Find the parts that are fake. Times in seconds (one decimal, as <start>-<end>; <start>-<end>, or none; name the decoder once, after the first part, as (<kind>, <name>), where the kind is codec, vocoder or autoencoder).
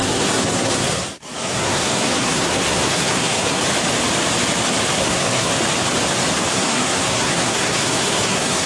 0.0-3.6 (codec, SNAC); 5.0-5.5; 6.5-8.7